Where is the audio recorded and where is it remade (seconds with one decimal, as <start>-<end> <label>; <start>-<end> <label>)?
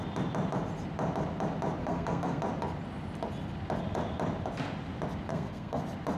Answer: 0.0-1.8 recorded; 1.8-2.4 remade; 2.4-5.3 recorded; 5.3-5.8 remade; 5.8-6.2 recorded